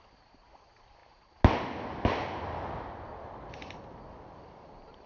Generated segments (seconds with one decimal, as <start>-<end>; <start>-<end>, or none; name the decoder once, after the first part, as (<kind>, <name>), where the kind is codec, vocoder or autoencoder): none